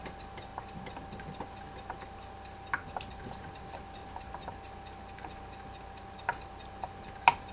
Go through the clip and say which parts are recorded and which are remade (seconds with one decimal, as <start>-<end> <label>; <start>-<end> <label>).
0.0-7.5 recorded